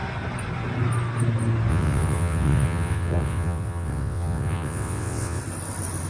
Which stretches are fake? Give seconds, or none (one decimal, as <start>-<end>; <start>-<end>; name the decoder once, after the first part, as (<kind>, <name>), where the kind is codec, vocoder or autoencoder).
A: 1.7-5.4 (vocoder, WaveNeXt)